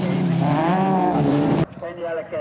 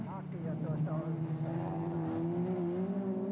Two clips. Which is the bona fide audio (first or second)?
second